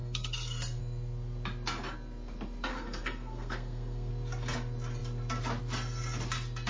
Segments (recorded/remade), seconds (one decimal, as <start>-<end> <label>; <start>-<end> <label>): 0.0-0.8 remade; 0.8-2.7 recorded; 2.7-4.1 remade; 4.1-6.7 recorded